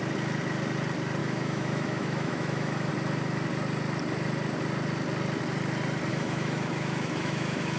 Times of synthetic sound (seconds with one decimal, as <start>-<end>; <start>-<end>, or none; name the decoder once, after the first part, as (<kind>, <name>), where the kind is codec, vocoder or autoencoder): 1.2-2.9 (autoencoder, DAC-VAE); 6.1-7.8